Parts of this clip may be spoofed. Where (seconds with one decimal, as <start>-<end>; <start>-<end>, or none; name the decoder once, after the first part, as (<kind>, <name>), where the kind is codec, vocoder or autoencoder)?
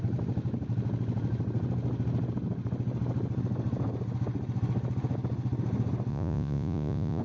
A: 6.1-7.2 (vocoder, Vocos)